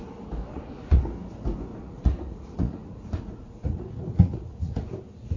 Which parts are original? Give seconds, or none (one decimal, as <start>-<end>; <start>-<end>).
0.0-0.5; 1.0-1.7; 4.9-5.4